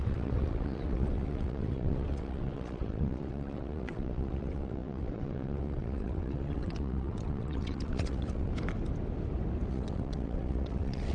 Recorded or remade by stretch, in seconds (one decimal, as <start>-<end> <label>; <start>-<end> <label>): 0.0-8.5 remade; 8.5-9.7 recorded; 9.7-11.1 remade